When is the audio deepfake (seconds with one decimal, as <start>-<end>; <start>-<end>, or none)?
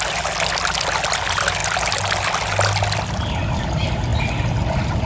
none